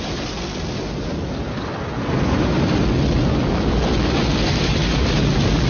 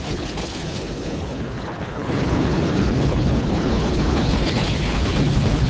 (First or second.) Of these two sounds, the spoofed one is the second